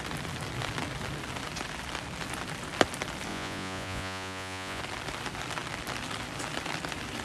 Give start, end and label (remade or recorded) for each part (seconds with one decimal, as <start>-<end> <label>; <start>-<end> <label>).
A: 0.0-3.3 recorded; 3.3-4.8 remade; 4.8-7.2 recorded